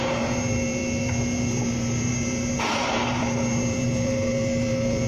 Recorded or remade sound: remade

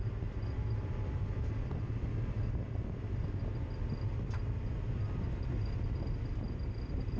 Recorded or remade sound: recorded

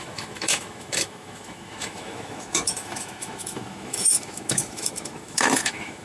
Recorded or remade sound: remade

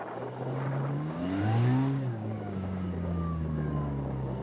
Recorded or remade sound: remade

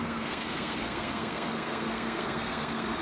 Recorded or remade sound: remade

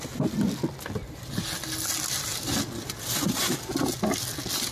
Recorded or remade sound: recorded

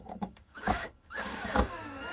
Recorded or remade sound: remade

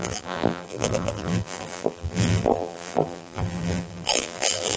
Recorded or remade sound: remade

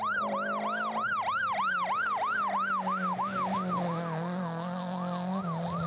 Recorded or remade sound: recorded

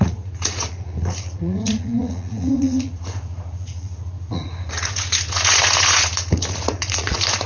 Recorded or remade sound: remade